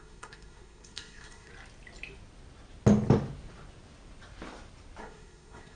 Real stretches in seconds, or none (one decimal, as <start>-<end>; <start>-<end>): 1.5-5.0